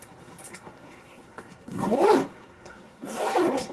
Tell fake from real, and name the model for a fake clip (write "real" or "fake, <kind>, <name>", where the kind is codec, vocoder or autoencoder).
fake, codec, SNAC